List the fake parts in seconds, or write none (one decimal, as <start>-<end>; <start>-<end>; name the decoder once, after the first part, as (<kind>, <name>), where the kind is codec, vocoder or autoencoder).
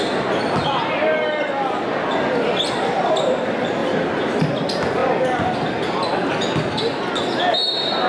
3.8-4.4 (vocoder, BigVGAN v2)